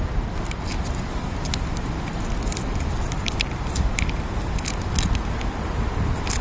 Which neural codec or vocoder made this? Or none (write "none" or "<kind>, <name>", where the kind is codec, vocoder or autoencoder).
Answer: none